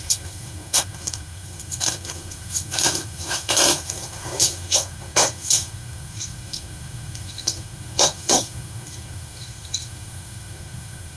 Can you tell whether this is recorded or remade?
remade